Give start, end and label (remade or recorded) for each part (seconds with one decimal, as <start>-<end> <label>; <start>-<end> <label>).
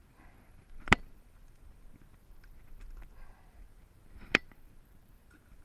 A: 0.0-4.0 recorded; 4.0-5.1 remade; 5.1-5.6 recorded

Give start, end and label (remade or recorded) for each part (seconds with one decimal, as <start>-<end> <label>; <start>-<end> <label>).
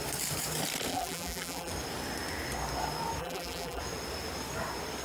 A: 0.0-0.9 recorded; 0.9-1.7 remade; 1.7-3.2 recorded; 3.2-3.8 remade; 3.8-5.0 recorded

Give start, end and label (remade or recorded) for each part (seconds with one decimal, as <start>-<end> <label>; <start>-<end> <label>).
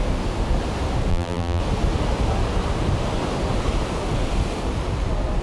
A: 0.0-1.1 recorded; 1.1-1.6 remade; 1.6-5.4 recorded